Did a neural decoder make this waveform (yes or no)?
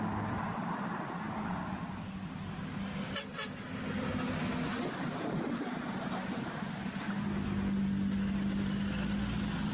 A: no